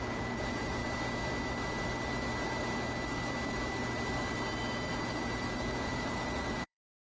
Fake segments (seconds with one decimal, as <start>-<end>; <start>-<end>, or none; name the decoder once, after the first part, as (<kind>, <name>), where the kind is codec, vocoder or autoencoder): 0.0-0.8 (vocoder, Vocos); 4.9-7.1